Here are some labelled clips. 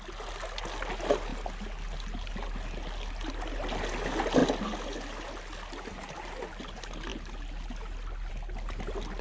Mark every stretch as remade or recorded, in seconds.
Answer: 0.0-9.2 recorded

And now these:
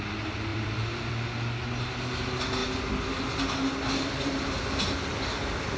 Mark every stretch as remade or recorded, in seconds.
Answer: 0.0-0.5 recorded; 0.5-1.1 remade; 1.1-5.8 recorded

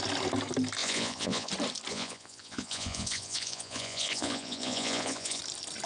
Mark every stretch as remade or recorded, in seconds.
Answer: 0.0-0.8 recorded; 0.8-1.5 remade; 1.5-1.9 recorded; 1.9-5.4 remade; 5.4-5.9 recorded

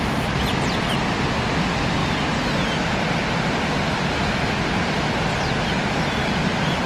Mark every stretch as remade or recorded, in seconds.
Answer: 0.0-6.9 recorded

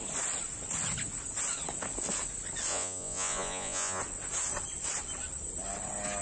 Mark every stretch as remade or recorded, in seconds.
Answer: 0.0-2.7 recorded; 2.7-4.0 remade; 4.0-6.2 recorded